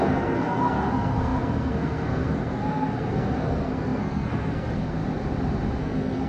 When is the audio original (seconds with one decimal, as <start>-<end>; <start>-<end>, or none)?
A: 5.0-5.8